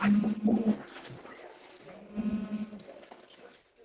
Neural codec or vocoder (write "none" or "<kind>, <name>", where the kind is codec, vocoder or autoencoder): none